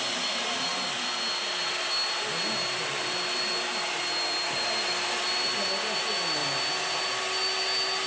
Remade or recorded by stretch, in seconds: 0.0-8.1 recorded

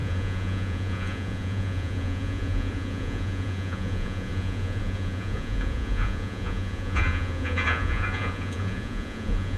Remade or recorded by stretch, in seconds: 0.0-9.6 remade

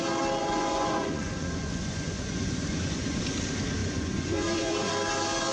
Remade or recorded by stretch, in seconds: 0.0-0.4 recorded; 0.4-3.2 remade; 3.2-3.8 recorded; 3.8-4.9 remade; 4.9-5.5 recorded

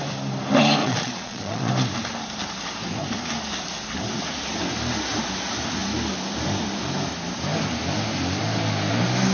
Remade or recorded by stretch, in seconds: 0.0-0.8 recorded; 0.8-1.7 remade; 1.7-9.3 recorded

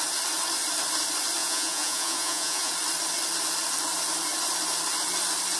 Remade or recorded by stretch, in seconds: 0.0-1.4 recorded; 1.4-2.7 remade; 2.7-5.6 recorded

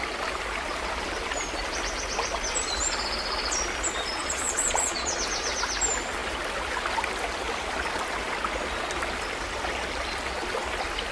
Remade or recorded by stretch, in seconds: 0.0-4.2 recorded; 4.2-5.2 remade; 5.2-11.1 recorded

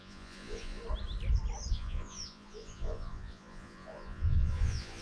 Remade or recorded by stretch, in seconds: 0.0-0.8 remade; 0.8-1.7 recorded; 1.7-5.0 remade

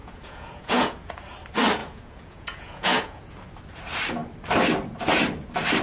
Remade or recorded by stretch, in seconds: 0.0-1.1 remade; 1.1-1.8 recorded; 1.8-3.4 remade; 3.4-5.8 recorded